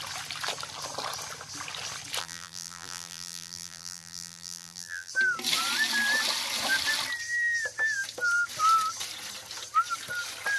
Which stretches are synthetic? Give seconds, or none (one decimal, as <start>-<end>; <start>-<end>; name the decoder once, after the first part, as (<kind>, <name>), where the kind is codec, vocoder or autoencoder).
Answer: 2.2-5.1 (vocoder, BigVGAN v2)